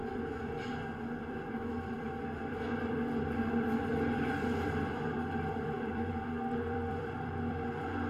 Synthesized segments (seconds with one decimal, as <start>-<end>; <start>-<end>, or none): 0.0-8.1